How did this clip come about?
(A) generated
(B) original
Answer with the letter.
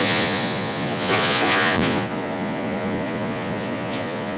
A